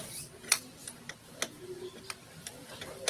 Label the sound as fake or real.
real